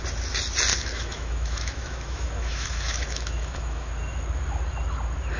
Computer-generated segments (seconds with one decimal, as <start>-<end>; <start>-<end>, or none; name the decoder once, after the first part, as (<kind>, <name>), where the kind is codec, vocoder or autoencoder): 0.7-3.9 (autoencoder, DAC-VAE)